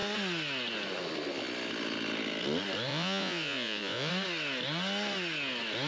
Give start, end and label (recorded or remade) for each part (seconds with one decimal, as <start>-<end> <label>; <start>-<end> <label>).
0.0-2.9 recorded; 2.9-4.1 remade; 4.1-5.9 recorded